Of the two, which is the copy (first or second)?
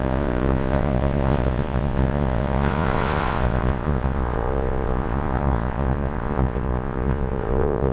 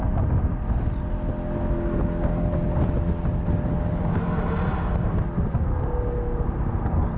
first